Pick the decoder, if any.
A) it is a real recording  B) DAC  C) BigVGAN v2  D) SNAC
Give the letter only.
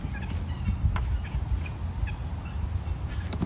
A